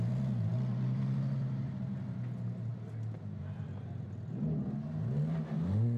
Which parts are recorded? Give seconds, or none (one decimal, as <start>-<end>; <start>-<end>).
0.0-6.0